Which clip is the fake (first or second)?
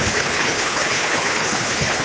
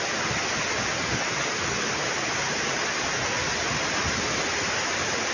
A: first